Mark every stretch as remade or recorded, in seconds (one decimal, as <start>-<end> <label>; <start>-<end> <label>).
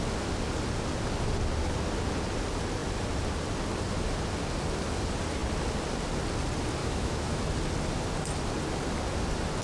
0.0-6.8 recorded; 6.8-7.4 remade; 7.4-9.6 recorded